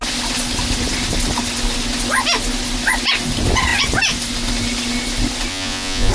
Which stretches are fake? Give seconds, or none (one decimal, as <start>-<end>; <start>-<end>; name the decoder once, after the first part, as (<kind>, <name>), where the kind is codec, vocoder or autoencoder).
5.5-6.1 (vocoder, Vocos)